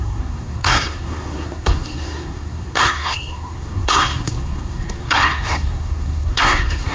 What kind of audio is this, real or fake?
fake